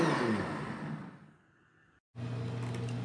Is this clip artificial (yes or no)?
no